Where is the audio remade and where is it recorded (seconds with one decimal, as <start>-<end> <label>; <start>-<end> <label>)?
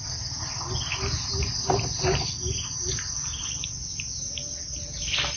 0.0-5.4 recorded